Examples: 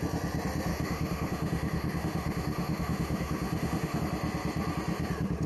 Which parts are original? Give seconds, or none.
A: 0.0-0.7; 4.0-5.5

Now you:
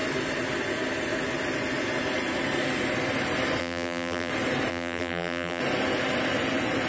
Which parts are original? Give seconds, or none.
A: 0.0-3.6; 4.3-4.7; 5.6-6.9

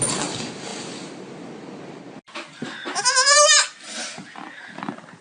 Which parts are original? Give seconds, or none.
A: 0.0-5.2

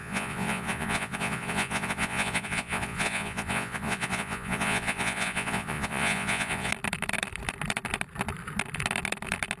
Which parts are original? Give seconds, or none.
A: 6.7-9.6

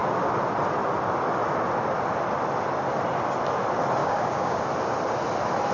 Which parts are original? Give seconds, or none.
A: 0.0-4.0; 4.6-5.7